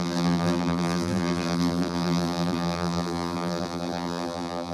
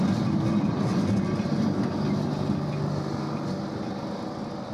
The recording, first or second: second